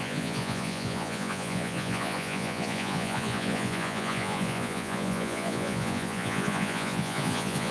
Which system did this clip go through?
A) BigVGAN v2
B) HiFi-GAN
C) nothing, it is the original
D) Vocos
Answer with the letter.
D